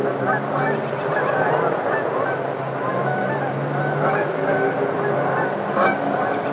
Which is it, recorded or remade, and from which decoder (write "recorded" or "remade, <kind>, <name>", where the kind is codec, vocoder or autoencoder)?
recorded